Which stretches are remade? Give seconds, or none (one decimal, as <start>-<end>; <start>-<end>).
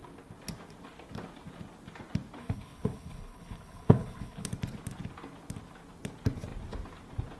2.4-4.5